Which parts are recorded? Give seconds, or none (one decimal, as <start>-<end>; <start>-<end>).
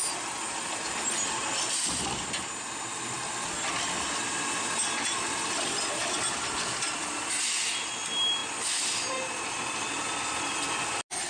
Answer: 0.0-11.3